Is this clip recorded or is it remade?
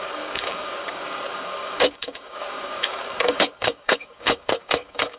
remade